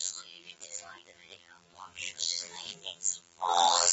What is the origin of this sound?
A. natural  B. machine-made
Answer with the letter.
B